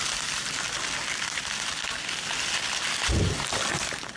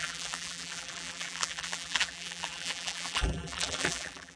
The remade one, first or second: second